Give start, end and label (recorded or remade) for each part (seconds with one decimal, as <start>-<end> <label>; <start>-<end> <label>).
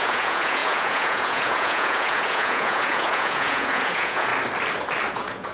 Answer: 0.0-4.3 remade; 4.3-5.1 recorded; 5.1-5.5 remade